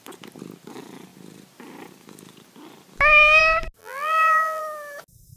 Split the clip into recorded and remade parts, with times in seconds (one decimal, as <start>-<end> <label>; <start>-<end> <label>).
0.0-3.8 recorded; 3.8-4.6 remade; 4.6-5.4 recorded